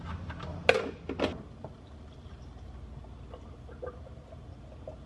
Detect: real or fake real